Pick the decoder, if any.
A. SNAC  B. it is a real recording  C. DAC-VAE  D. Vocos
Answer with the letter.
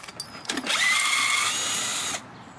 B